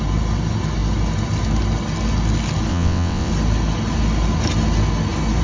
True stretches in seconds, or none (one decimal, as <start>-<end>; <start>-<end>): 0.0-2.7; 3.3-5.4